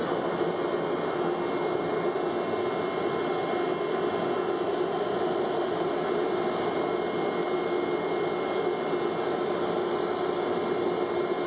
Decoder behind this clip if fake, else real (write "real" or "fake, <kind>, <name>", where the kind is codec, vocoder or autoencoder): real